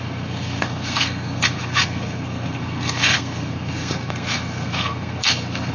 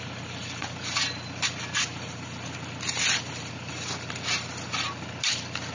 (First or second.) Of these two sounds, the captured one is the second